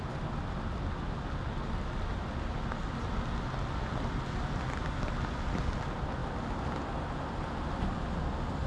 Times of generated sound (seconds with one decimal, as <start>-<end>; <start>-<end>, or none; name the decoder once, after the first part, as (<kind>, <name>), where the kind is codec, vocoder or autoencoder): none